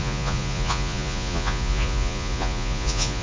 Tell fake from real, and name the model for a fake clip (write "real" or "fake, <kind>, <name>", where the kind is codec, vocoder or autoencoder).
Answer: fake, vocoder, Vocos